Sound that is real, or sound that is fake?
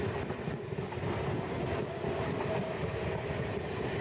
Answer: real